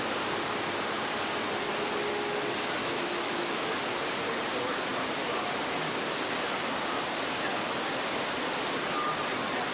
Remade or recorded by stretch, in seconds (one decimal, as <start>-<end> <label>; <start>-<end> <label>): 0.0-2.8 recorded; 2.8-3.8 remade; 3.8-9.7 recorded